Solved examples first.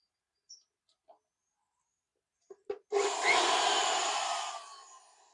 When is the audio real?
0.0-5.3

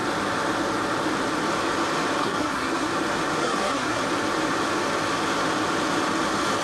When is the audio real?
0.0-2.2; 2.9-3.4; 4.0-6.6

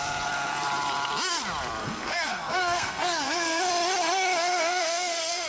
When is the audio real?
0.0-1.8; 3.6-4.5

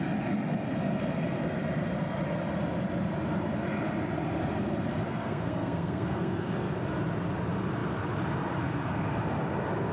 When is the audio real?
0.0-5.1; 6.7-9.9

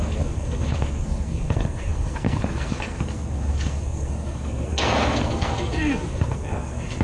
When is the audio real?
none